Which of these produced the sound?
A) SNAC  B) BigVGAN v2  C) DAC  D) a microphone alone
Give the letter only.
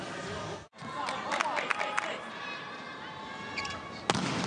D